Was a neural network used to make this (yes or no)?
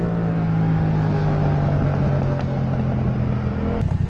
no